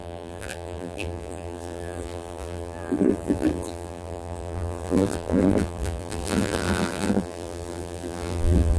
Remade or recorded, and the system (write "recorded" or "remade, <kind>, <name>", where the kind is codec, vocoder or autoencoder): remade, vocoder, BigVGAN v2